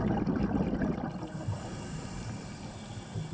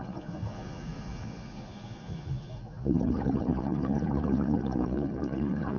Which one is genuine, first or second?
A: first